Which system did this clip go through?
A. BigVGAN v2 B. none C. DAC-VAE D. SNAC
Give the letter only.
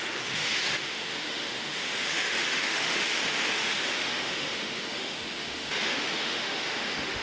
C